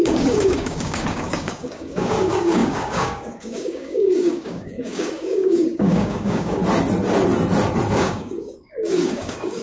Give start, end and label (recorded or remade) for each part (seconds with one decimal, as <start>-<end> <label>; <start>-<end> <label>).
0.0-6.6 remade; 6.6-7.9 recorded; 7.9-9.6 remade